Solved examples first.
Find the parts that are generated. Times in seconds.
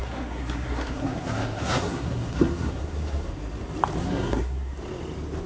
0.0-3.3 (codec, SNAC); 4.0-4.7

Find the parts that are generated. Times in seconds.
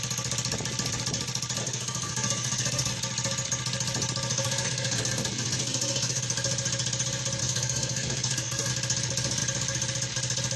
1.6-2.9 (codec, SNAC); 4.3-6.2; 7.4-8.7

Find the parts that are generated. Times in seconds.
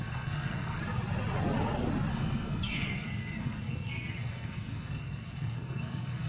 0.0-0.8 (codec, SNAC); 2.1-6.3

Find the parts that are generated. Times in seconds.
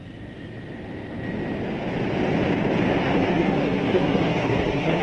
3.0-5.0 (codec, SNAC)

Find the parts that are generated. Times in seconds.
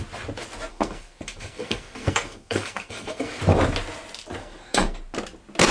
0.7-3.4 (codec, SNAC); 4.4-5.0